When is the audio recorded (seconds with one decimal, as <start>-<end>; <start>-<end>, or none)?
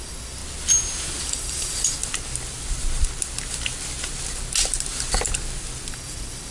0.4-1.2; 2.0-5.9